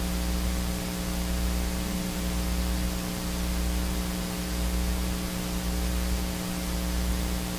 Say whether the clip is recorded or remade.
recorded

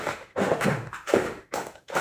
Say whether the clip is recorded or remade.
remade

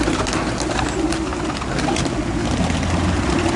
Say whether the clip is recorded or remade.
recorded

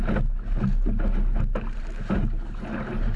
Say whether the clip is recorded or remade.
recorded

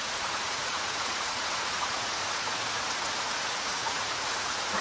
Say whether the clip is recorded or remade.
remade